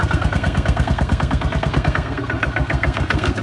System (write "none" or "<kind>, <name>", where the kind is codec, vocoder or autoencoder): codec, SNAC